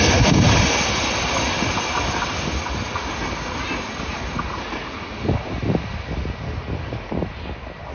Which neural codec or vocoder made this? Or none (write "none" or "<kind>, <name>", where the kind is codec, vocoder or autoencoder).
none